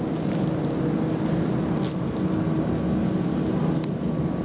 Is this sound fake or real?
real